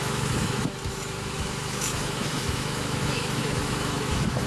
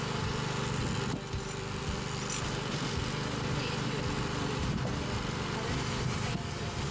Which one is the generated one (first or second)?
first